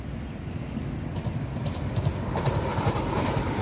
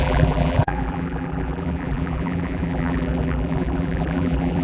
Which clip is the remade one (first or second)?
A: second